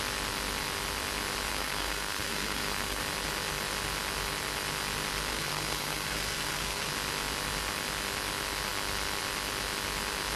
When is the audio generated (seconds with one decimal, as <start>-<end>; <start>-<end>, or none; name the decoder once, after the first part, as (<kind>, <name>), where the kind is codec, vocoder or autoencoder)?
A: 1.5-3.0 (codec, SNAC); 5.3-6.9